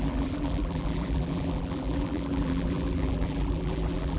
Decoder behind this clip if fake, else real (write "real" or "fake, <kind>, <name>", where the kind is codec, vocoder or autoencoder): fake, vocoder, BigVGAN v2